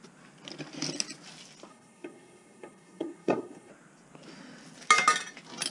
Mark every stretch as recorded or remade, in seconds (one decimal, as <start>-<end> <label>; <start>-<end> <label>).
0.0-1.7 recorded; 1.7-3.7 remade; 3.7-5.7 recorded